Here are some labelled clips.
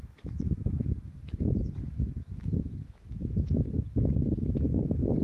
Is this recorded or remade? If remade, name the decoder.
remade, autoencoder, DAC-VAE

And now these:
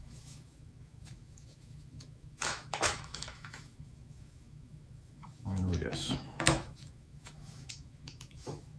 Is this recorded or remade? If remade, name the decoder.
remade, autoencoder, DAC-VAE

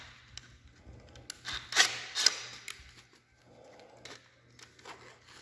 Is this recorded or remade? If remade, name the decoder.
recorded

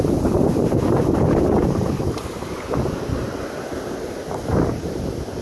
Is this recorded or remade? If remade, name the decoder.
recorded